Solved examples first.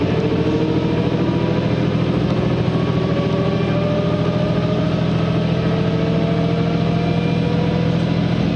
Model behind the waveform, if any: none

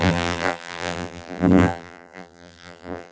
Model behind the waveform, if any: vocoder, BigVGAN v2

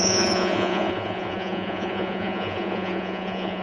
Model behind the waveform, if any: vocoder, Vocos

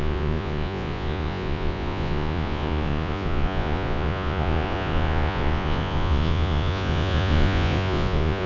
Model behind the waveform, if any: vocoder, Vocos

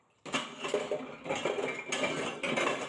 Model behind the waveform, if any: none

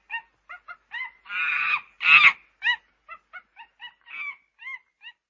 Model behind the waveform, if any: none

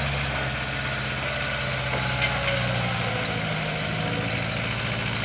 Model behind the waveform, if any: none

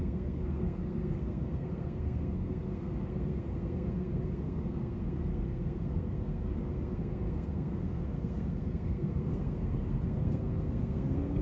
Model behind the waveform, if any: codec, SNAC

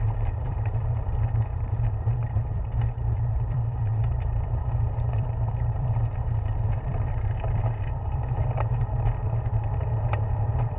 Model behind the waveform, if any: vocoder, BigVGAN v2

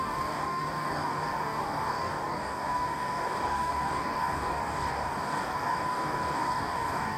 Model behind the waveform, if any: codec, DAC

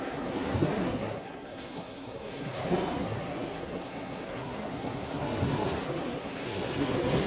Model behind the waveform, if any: codec, SNAC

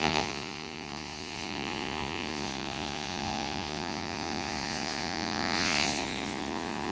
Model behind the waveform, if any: vocoder, Vocos